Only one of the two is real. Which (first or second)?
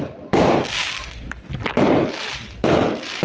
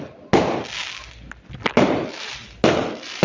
second